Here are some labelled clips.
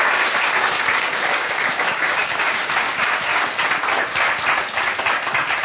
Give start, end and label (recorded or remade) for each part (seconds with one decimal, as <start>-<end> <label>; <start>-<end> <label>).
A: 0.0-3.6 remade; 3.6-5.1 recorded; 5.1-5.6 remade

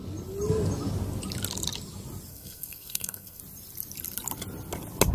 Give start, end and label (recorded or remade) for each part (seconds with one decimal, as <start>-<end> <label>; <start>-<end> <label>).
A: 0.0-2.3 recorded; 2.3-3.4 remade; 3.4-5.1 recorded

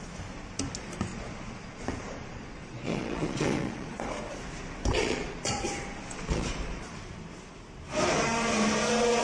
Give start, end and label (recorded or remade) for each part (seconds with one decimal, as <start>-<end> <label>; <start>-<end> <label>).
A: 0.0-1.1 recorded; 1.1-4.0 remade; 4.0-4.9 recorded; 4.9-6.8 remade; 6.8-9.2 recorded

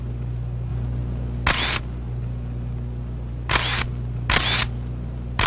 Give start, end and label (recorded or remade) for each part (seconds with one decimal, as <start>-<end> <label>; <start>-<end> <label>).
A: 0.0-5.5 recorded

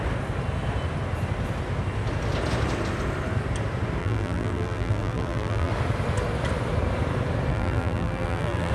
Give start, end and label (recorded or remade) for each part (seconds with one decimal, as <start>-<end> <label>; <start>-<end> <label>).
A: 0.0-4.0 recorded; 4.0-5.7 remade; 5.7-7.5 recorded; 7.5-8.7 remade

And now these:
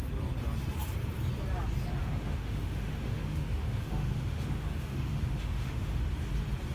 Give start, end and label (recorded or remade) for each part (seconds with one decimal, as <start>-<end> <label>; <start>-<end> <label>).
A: 0.0-2.0 recorded; 2.0-6.0 remade; 6.0-6.7 recorded

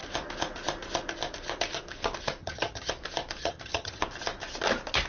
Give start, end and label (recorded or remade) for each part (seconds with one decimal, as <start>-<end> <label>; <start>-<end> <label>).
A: 0.0-2.4 recorded; 2.4-2.9 remade; 2.9-3.4 recorded; 3.4-4.0 remade; 4.0-5.1 recorded

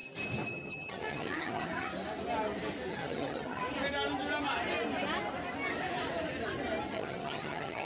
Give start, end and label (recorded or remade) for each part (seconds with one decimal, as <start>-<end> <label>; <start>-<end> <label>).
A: 0.0-0.5 recorded; 0.5-1.9 remade; 1.9-2.9 recorded; 2.9-3.6 remade; 3.6-6.9 recorded; 6.9-7.8 remade